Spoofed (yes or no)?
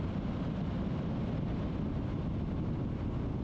no